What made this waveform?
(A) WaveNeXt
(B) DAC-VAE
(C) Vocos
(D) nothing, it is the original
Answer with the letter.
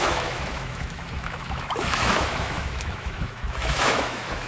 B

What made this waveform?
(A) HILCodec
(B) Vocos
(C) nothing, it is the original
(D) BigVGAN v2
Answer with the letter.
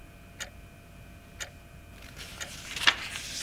C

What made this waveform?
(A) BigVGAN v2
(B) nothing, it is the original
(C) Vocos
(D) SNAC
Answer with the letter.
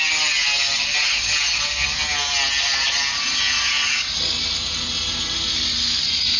B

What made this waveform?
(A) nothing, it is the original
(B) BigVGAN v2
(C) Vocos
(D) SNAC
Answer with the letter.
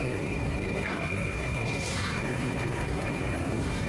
D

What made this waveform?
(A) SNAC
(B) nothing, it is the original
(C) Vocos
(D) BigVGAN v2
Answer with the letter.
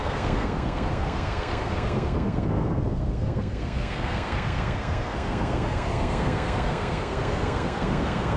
A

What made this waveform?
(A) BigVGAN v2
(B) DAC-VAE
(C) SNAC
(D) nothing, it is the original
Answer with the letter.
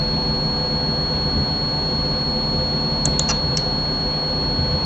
D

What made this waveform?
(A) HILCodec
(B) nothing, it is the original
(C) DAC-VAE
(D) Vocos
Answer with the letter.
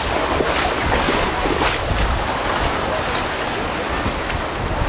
B